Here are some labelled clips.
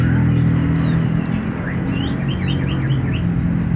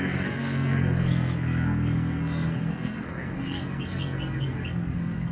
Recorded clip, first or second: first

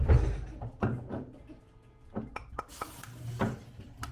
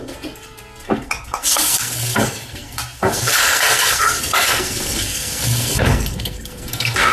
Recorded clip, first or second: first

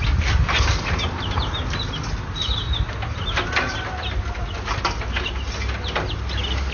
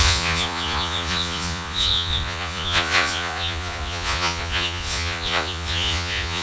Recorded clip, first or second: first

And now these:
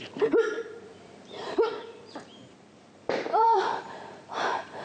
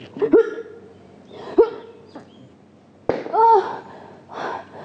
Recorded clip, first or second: second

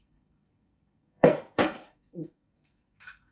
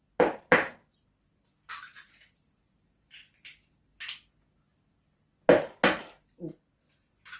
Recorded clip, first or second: second